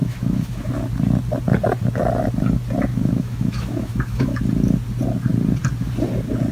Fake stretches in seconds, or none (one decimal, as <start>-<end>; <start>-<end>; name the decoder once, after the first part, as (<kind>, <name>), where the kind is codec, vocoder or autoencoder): 0.0-0.7 (autoencoder, DAC-VAE); 2.9-4.4